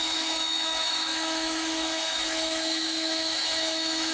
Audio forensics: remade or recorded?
remade